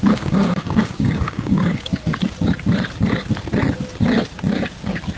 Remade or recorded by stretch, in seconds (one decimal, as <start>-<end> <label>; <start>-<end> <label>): 0.0-1.9 remade; 1.9-5.2 recorded